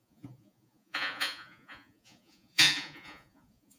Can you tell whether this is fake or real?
fake